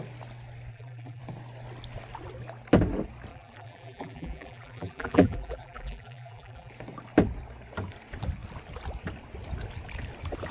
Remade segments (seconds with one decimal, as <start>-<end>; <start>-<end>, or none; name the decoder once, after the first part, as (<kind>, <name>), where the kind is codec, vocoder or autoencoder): 0.7-1.2 (vocoder, BigVGAN v2); 3.3-6.7

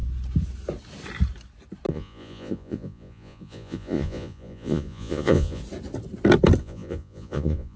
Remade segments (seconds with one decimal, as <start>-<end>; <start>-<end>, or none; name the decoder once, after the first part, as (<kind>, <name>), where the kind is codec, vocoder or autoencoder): 1.9-5.6 (vocoder, Vocos); 6.6-7.8

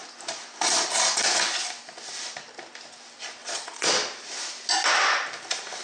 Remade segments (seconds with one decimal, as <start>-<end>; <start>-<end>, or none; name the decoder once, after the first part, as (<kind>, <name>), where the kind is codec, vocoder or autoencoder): 3.4-3.9 (vocoder, Vocos)

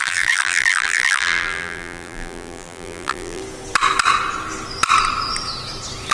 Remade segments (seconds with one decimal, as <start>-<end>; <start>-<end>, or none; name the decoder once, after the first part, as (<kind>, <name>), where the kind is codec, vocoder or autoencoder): 0.0-3.4 (vocoder, BigVGAN v2)